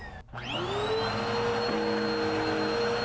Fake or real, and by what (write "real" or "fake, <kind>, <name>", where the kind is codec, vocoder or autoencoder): real